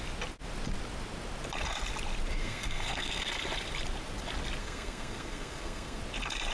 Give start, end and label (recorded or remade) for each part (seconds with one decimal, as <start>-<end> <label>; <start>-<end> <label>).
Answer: 0.0-2.4 recorded; 2.4-3.3 remade; 3.3-4.6 recorded; 4.6-6.0 remade; 6.0-6.5 recorded